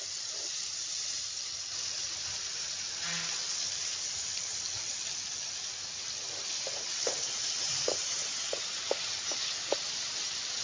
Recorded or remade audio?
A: recorded